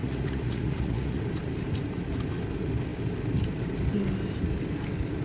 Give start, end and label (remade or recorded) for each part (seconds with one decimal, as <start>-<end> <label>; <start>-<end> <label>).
0.0-1.2 remade; 1.2-5.2 recorded